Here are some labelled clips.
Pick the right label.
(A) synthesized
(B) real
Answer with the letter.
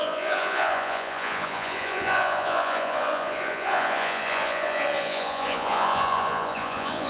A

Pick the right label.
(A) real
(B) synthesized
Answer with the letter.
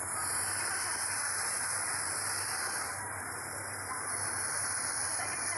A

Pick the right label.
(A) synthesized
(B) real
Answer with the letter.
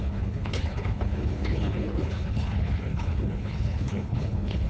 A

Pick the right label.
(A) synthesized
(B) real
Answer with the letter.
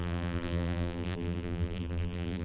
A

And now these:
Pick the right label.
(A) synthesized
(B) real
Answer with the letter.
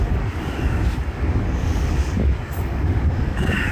A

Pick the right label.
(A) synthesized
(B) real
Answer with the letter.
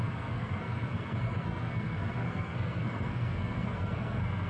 A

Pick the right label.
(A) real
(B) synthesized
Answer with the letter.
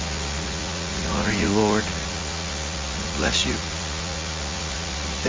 B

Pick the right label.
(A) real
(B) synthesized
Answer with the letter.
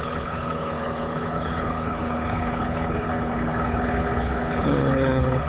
B